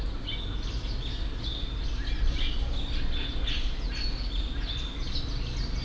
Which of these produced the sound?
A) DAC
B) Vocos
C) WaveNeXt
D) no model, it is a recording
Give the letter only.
D